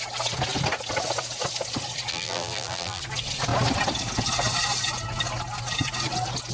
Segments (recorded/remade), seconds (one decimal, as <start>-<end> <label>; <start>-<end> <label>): 0.0-2.1 recorded; 2.1-3.0 remade; 3.0-6.5 recorded